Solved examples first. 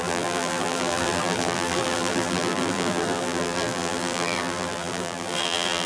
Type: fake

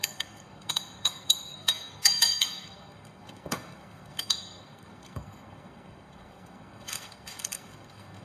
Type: fake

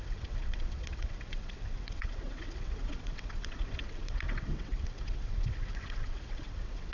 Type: fake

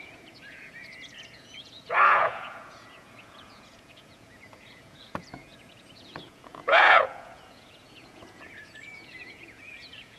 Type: fake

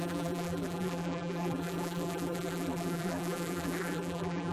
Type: fake